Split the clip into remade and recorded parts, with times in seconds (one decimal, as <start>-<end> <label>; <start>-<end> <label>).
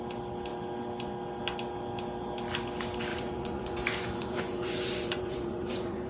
0.0-3.1 recorded; 3.1-6.1 remade